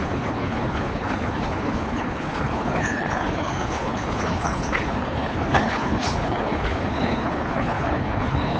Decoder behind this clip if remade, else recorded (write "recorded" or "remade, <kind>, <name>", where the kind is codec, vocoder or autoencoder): remade, codec, HILCodec